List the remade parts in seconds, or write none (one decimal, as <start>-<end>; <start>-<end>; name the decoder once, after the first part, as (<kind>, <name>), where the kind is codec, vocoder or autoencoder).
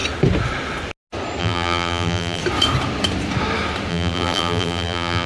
1.4-2.4 (vocoder, BigVGAN v2); 3.9-5.3